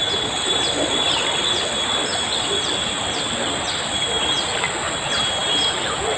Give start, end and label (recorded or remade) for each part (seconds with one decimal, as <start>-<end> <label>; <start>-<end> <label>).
0.0-6.2 recorded